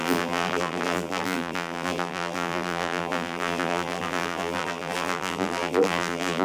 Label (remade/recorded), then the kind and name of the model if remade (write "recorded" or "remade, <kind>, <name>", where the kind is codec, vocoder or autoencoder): remade, vocoder, BigVGAN v2